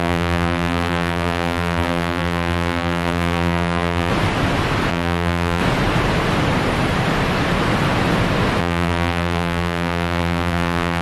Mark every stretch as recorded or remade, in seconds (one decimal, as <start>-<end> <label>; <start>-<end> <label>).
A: 0.0-4.1 remade; 4.1-4.9 recorded; 4.9-5.6 remade; 5.6-8.6 recorded; 8.6-11.0 remade